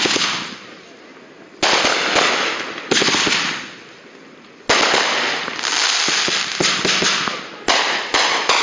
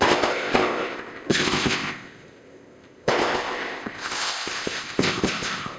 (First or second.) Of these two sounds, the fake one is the second